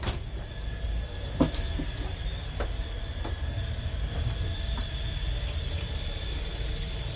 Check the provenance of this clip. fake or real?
real